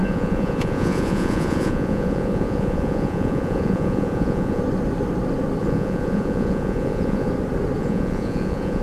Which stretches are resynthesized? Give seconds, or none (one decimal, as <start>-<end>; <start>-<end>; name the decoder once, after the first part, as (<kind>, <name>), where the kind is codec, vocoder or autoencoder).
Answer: 0.0-4.6 (vocoder, Vocos); 5.6-7.3; 7.8-8.8